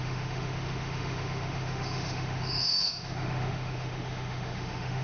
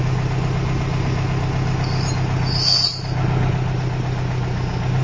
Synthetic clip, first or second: first